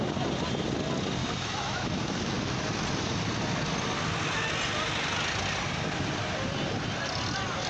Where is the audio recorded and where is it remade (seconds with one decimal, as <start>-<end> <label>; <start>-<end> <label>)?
0.0-1.2 recorded; 1.2-2.5 remade; 2.5-7.7 recorded